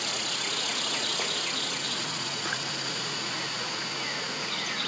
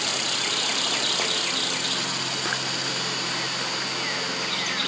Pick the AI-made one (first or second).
first